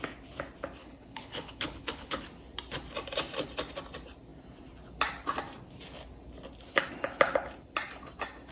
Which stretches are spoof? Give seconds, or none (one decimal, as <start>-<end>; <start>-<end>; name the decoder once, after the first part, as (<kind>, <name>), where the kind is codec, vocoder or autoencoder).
0.8-2.2 (codec, HILCodec)